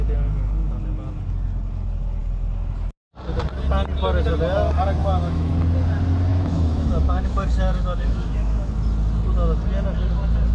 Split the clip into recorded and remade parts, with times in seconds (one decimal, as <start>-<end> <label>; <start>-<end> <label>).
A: 0.0-5.0 recorded; 5.0-5.5 remade; 5.5-6.3 recorded; 6.3-8.7 remade; 8.7-10.5 recorded